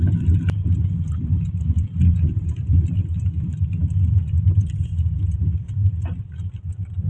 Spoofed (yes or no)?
no